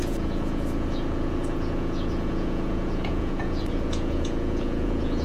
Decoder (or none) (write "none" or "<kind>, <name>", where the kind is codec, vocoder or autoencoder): vocoder, Vocos